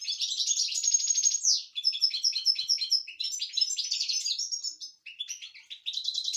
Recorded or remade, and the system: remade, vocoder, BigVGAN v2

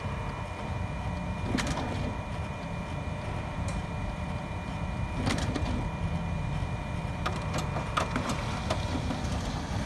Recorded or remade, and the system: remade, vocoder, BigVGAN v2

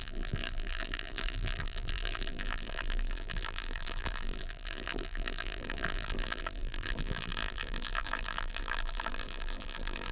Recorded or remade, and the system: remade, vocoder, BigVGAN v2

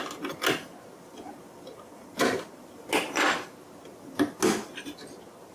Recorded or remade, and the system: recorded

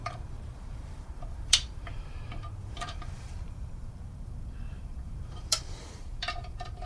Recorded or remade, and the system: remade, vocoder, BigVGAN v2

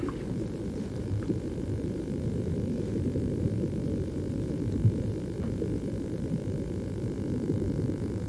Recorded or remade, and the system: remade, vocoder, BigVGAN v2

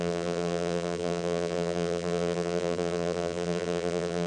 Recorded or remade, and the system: remade, vocoder, BigVGAN v2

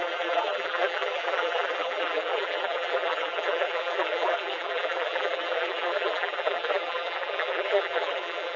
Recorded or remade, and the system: remade, vocoder, BigVGAN v2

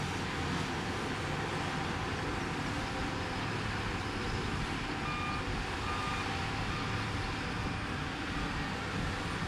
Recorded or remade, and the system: recorded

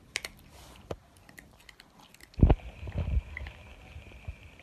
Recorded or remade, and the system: recorded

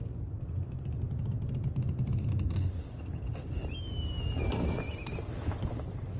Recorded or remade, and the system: recorded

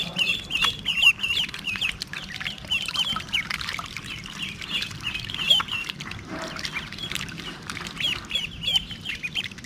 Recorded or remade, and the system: remade, vocoder, BigVGAN v2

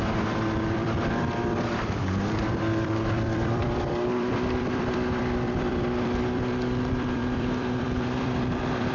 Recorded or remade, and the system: remade, vocoder, BigVGAN v2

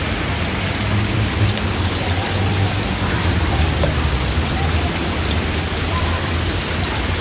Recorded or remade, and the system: remade, vocoder, BigVGAN v2